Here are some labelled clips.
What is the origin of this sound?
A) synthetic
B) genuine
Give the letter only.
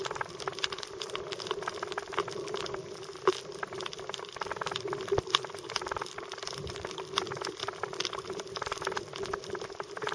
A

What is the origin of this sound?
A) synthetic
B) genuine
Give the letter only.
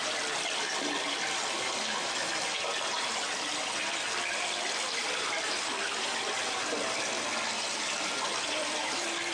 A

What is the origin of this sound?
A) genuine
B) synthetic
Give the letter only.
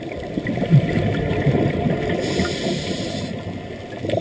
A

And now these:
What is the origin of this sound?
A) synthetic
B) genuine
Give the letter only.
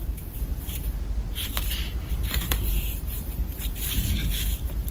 A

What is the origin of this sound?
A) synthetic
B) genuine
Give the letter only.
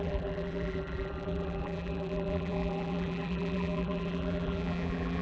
A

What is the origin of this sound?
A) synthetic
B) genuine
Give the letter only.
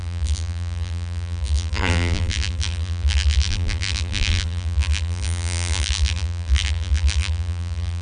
A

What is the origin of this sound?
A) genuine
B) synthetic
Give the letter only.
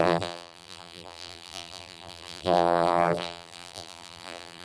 B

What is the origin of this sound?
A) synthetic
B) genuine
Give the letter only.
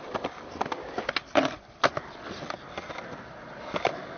B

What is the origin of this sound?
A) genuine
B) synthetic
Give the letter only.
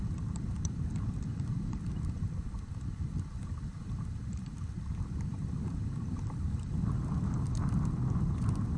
B